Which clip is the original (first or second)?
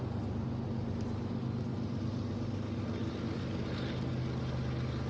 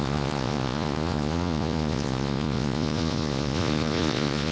first